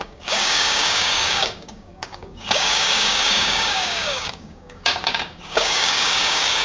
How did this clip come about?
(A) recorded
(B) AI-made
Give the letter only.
B